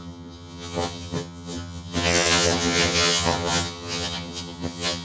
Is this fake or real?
fake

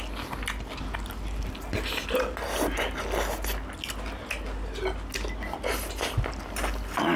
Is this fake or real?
real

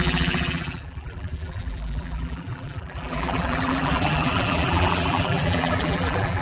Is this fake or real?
fake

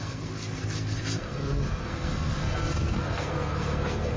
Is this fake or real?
fake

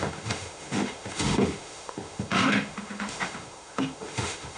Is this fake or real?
fake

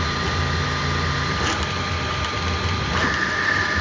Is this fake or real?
real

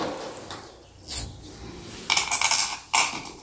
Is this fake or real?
real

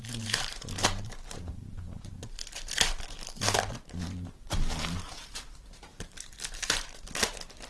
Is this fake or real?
fake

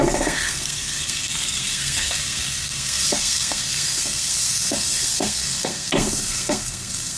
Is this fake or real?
fake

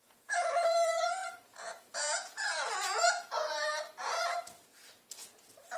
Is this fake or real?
fake